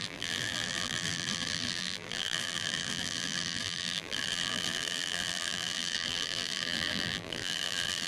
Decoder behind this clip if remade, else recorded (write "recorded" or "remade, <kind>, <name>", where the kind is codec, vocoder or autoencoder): remade, vocoder, BigVGAN v2